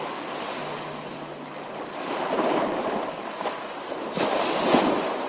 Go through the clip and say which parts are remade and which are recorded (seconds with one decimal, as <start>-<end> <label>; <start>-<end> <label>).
0.0-5.3 recorded